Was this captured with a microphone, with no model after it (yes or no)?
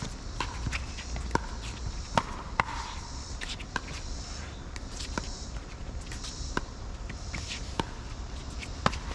no